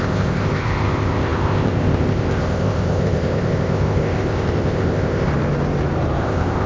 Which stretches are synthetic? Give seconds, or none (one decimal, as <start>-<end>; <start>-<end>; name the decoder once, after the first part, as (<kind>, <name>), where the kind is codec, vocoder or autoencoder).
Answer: 0.0-5.3 (codec, ZipCodec); 6.2-6.7